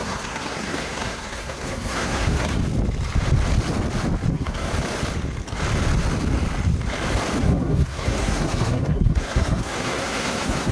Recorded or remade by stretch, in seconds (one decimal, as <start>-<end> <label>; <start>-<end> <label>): 0.0-2.6 remade; 2.6-4.3 recorded; 4.3-4.7 remade; 4.7-7.4 recorded; 7.4-10.7 remade